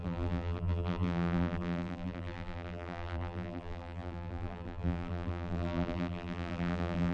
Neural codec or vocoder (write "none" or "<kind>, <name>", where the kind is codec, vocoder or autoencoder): vocoder, BigVGAN v2